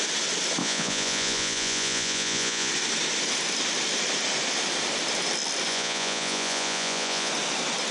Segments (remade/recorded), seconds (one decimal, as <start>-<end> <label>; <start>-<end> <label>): 0.0-0.6 recorded; 0.6-2.7 remade; 2.7-5.7 recorded; 5.7-7.3 remade; 7.3-7.9 recorded